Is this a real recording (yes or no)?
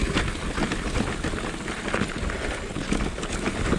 yes